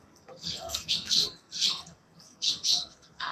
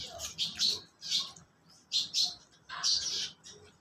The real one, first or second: second